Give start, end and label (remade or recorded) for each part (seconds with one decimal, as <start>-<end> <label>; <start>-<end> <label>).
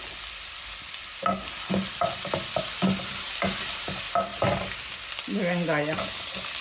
0.0-6.6 recorded